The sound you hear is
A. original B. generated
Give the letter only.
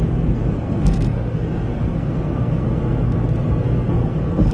B